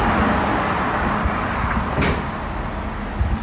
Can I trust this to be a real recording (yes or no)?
yes